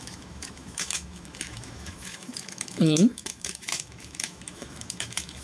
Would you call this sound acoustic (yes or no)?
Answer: no